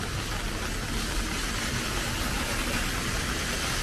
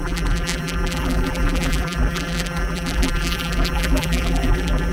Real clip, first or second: first